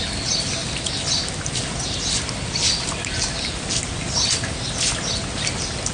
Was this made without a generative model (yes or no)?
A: yes